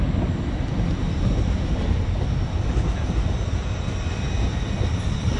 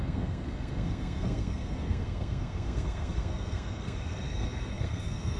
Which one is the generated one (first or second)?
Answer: second